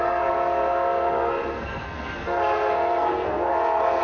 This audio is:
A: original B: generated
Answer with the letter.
B